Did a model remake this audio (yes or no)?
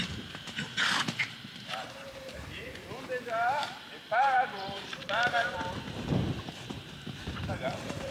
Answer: yes